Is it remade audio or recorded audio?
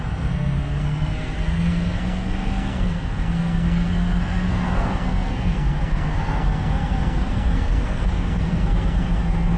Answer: remade